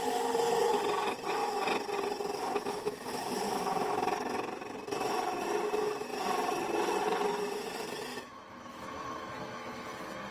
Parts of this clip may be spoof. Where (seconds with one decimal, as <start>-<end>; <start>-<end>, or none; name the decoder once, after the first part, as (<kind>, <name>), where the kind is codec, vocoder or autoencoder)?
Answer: 8.1-9.9 (autoencoder, DAC-VAE)